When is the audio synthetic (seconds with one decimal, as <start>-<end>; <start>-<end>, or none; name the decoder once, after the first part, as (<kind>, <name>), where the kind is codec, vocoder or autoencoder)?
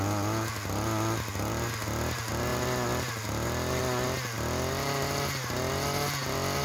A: none